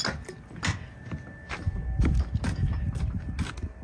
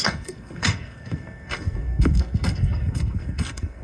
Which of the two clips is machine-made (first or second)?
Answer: second